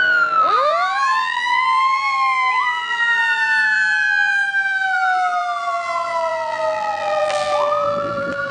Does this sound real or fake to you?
fake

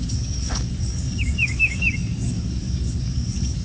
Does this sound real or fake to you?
fake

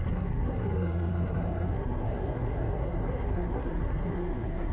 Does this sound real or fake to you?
fake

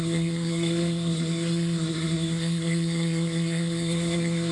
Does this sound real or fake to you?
fake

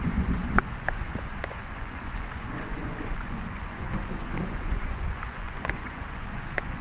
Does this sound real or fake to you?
fake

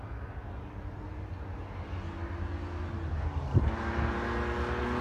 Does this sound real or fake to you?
real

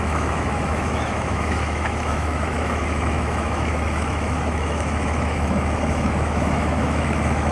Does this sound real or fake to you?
fake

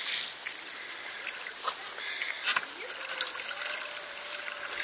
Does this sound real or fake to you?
real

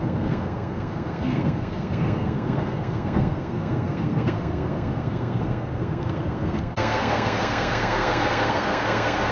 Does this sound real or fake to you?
fake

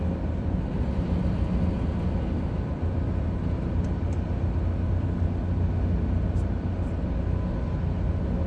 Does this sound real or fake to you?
real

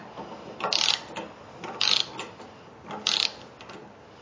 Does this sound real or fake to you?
real